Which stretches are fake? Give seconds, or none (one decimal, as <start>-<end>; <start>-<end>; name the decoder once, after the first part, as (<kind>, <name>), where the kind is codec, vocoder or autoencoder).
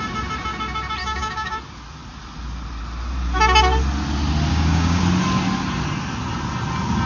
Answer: 1.0-1.6 (codec, DAC); 4.5-5.0